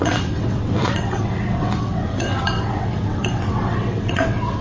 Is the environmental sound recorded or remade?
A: remade